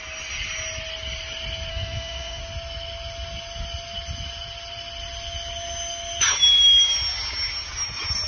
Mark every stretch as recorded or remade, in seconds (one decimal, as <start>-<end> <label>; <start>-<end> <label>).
0.0-1.7 recorded; 1.7-2.4 remade; 2.4-8.3 recorded